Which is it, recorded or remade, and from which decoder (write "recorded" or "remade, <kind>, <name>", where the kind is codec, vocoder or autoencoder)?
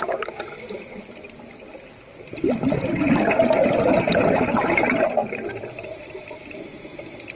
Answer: recorded